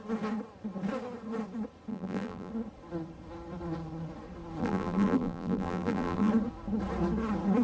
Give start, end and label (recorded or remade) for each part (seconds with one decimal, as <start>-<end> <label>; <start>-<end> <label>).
0.0-1.9 recorded; 1.9-2.5 remade; 2.5-4.6 recorded; 4.6-6.3 remade; 6.3-7.6 recorded